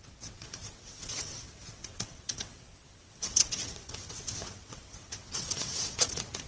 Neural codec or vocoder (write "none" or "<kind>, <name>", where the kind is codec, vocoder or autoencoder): vocoder, WaveNeXt